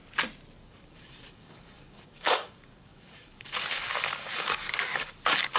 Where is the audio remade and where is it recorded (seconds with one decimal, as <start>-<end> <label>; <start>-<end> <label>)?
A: 0.0-0.6 recorded; 0.6-5.6 remade